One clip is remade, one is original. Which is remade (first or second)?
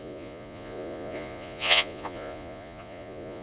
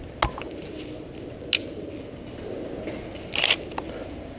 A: first